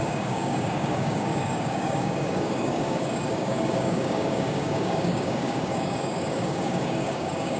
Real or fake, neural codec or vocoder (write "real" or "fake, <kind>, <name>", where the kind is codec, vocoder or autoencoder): fake, codec, DAC